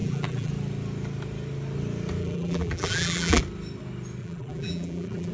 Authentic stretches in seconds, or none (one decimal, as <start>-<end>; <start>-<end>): 0.5-2.2; 3.4-4.2